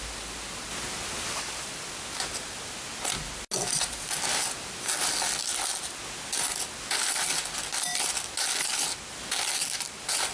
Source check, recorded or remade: recorded